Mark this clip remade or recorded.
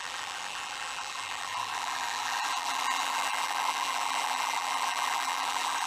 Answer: remade